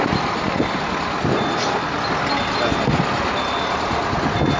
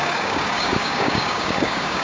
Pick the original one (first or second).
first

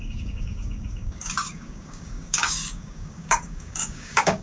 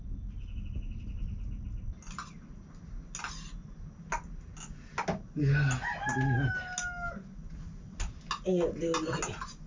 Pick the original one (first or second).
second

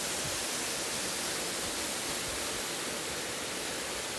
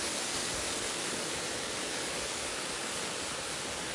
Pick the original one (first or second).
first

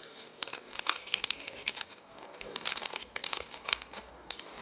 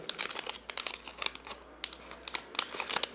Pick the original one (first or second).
second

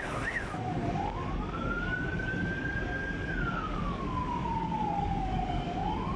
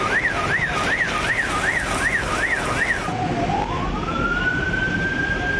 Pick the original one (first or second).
second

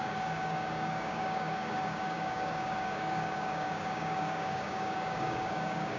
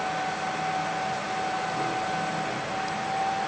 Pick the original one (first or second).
second